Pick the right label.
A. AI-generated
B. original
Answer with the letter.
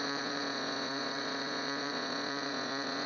A